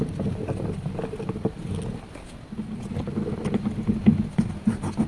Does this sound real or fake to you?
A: real